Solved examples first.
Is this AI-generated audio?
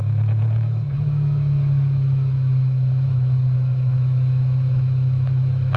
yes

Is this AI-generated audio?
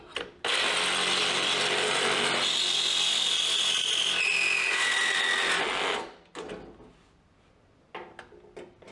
no